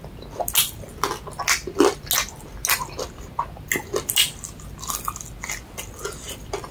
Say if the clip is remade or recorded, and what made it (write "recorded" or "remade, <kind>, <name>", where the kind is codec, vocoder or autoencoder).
recorded